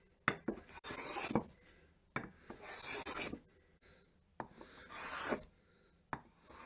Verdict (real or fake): real